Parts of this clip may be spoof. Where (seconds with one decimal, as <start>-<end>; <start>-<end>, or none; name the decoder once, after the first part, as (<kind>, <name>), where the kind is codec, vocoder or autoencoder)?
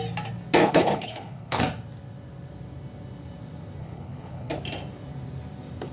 0.6-1.6 (codec, HILCodec); 3.8-4.5